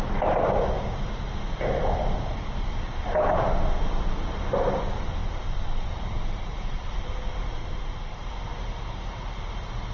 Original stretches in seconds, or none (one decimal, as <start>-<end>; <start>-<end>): 0.0-5.2; 6.9-7.6; 8.3-9.9